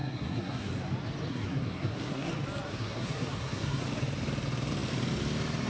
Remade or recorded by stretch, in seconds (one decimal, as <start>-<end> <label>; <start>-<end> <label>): 0.0-0.7 remade; 0.7-1.3 recorded; 1.3-2.3 remade; 2.3-2.7 recorded; 2.7-3.8 remade; 3.8-5.7 recorded